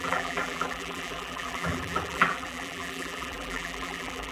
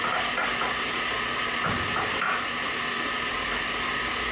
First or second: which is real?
second